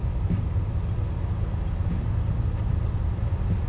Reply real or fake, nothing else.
real